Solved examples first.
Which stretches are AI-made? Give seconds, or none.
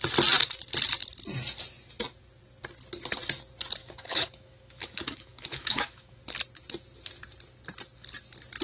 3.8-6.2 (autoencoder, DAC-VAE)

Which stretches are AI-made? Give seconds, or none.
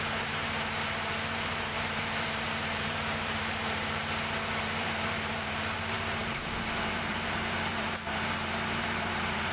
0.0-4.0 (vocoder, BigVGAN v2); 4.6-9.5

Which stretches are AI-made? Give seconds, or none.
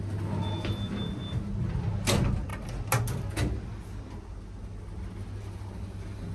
none